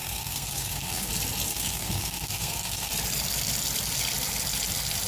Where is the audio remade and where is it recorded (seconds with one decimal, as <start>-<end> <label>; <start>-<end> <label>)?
0.0-1.1 remade; 1.1-1.5 recorded; 1.5-2.9 remade; 2.9-5.1 recorded